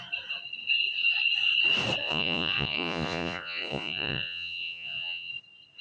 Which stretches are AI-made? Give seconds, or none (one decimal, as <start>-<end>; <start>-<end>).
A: 2.0-5.3